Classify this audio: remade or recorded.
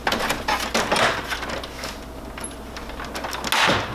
recorded